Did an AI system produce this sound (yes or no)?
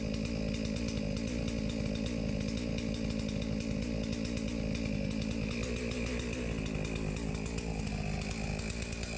no